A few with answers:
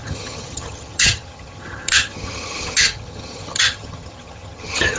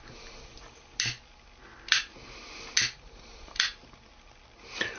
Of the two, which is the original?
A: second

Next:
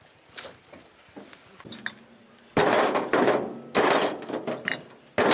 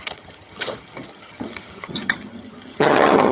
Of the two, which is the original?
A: first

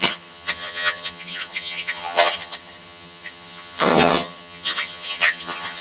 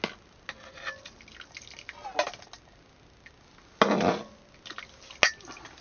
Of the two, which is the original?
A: second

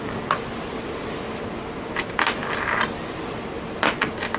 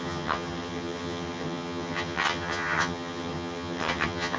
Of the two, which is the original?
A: first